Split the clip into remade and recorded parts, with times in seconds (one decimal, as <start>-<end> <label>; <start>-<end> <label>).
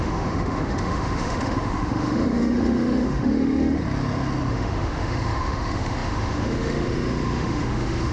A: 0.0-3.8 remade; 3.8-4.5 recorded; 4.5-8.1 remade